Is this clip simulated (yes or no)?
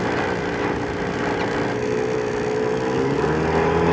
no